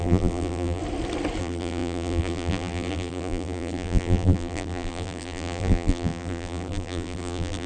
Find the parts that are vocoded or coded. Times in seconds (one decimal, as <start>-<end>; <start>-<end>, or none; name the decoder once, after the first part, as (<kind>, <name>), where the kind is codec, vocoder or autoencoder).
0.0-0.8 (vocoder, BigVGAN v2); 1.4-7.7

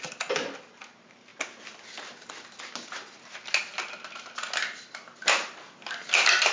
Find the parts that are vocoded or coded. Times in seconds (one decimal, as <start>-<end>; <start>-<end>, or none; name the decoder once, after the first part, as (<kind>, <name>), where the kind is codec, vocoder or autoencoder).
none

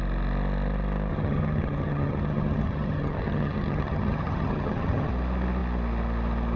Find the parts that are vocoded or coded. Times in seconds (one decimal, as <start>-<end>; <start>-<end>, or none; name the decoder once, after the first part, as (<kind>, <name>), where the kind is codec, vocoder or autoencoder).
1.1-5.1 (vocoder, HiFi-GAN)

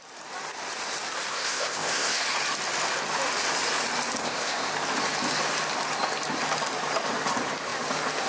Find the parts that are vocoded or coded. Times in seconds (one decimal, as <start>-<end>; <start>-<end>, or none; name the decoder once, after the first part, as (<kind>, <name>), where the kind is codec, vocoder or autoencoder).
1.3-2.2 (codec, ZipCodec); 4.2-4.7

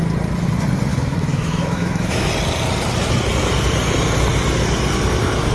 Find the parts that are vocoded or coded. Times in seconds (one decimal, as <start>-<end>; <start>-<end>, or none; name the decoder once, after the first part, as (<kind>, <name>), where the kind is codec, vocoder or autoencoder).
0.9-2.3 (autoencoder, DAC-VAE)

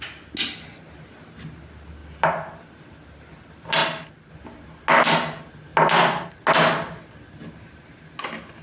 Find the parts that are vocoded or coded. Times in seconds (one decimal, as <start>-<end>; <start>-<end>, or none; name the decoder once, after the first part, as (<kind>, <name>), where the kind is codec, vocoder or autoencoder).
none

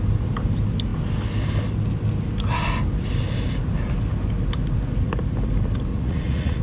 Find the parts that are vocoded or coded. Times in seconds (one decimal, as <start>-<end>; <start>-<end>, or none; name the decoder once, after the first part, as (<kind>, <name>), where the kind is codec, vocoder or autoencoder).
5.9-6.6 (vocoder, Vocos)